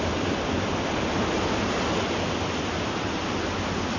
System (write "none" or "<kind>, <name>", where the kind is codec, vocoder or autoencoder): none